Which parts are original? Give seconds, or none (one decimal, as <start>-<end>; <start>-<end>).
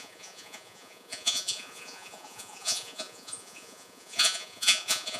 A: none